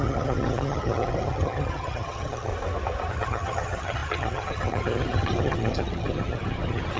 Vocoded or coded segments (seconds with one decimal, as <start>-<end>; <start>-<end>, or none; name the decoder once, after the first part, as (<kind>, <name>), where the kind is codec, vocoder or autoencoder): 0.0-2.5 (vocoder, HiFi-GAN); 3.1-7.0